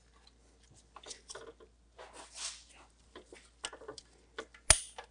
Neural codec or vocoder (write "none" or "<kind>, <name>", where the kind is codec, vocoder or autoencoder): none